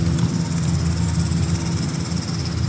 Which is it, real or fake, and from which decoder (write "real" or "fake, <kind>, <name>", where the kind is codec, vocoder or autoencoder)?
real